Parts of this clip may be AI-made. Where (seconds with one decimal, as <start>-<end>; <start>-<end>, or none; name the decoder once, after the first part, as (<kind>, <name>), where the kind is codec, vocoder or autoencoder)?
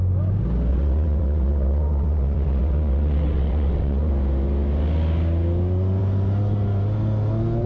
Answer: 0.7-4.1 (vocoder, WaveNeXt)